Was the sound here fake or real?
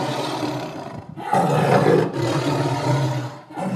real